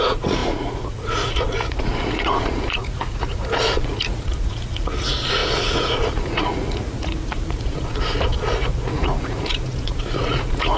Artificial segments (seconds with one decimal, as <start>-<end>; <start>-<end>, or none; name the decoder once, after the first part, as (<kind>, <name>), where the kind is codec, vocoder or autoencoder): 0.0-10.8 (vocoder, Vocos)